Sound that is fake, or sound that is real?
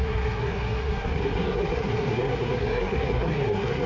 fake